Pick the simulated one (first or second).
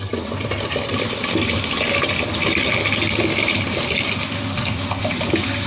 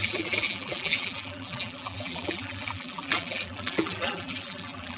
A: second